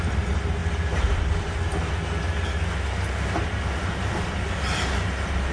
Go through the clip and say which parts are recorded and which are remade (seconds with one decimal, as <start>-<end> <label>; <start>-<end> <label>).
0.0-5.5 recorded